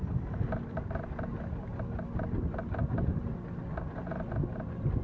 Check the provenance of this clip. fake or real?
real